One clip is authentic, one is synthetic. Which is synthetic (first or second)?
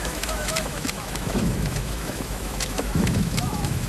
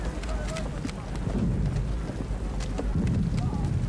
first